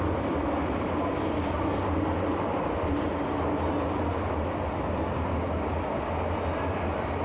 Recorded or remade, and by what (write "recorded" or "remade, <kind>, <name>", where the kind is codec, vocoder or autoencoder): recorded